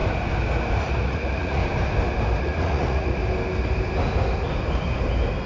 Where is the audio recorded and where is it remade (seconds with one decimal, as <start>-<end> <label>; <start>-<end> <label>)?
0.0-0.9 recorded; 0.9-1.6 remade; 1.6-2.4 recorded; 2.4-3.2 remade; 3.2-5.5 recorded